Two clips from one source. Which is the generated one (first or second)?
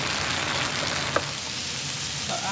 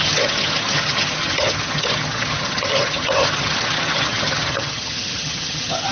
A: second